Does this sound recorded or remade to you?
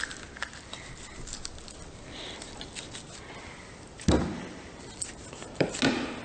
recorded